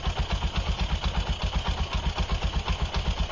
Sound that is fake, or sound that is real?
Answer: real